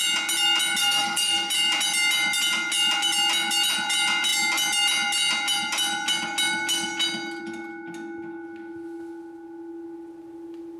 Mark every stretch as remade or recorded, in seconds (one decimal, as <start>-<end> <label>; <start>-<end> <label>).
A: 0.0-0.8 recorded; 0.8-1.5 remade; 1.5-10.8 recorded